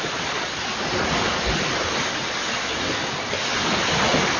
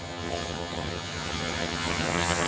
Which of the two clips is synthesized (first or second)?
second